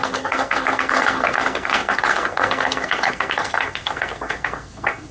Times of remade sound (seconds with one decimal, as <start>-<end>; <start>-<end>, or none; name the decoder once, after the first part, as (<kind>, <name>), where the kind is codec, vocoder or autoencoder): 0.0-5.1 (codec, SNAC)